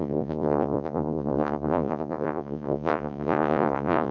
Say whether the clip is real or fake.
fake